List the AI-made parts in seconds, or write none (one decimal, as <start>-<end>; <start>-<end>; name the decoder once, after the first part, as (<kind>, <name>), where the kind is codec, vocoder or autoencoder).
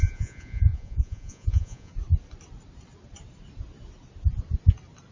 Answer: 0.0-1.9 (vocoder, Vocos)